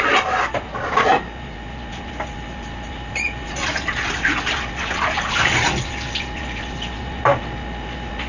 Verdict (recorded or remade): recorded